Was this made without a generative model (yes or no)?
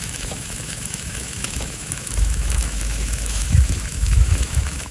no